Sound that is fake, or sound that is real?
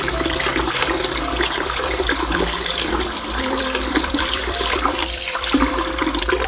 fake